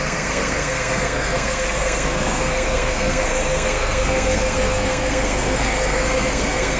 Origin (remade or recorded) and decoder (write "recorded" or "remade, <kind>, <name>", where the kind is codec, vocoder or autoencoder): remade, codec, SNAC